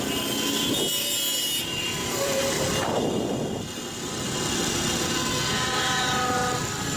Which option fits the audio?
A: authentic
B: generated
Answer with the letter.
A